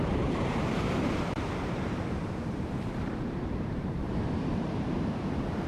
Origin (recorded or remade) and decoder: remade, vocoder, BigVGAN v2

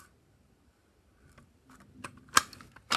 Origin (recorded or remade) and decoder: recorded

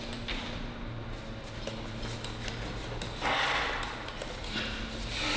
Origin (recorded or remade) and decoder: recorded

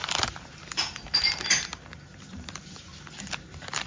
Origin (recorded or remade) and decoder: remade, vocoder, BigVGAN v2